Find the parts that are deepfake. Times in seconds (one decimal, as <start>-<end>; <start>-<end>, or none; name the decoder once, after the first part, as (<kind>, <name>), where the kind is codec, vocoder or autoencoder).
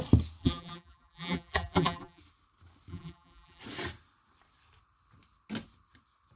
0.4-2.2 (vocoder, BigVGAN v2); 2.9-3.6